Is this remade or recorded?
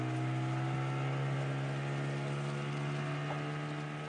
recorded